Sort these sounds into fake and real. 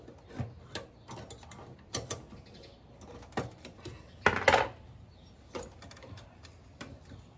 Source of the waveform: real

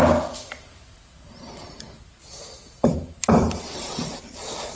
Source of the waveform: real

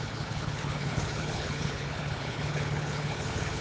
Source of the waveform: fake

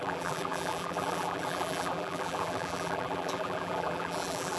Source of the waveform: fake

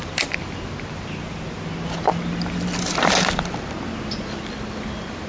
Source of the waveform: real